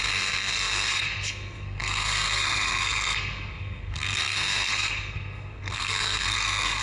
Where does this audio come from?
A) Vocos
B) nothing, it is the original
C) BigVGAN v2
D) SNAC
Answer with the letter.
D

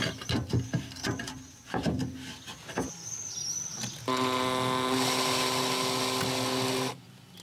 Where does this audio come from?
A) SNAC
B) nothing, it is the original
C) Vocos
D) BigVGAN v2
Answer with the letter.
B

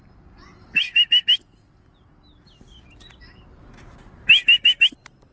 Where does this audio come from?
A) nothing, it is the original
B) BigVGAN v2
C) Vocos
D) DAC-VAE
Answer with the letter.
A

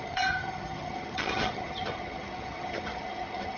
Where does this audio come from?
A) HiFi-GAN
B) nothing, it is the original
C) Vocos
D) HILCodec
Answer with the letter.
A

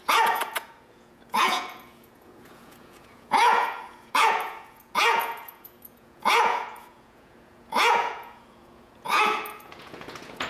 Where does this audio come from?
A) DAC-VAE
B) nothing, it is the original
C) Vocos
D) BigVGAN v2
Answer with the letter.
C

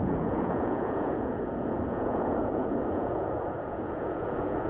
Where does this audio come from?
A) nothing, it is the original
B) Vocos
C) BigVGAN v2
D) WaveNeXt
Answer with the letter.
B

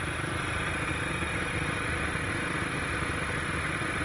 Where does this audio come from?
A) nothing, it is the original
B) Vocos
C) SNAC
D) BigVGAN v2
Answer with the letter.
A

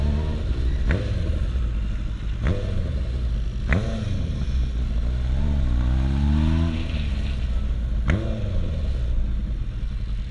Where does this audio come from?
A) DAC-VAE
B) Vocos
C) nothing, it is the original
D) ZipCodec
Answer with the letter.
C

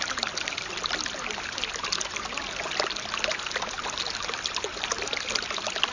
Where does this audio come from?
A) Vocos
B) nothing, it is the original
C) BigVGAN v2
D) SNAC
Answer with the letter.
C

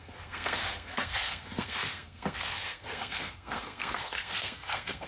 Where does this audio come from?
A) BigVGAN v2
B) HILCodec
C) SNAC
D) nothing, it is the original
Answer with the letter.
C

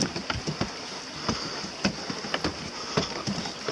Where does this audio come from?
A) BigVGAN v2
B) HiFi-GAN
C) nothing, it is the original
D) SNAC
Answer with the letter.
C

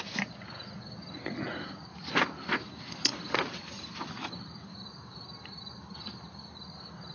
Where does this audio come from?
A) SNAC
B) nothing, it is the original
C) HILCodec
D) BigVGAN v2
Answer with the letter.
B